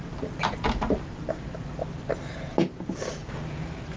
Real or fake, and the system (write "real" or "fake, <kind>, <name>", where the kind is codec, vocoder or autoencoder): real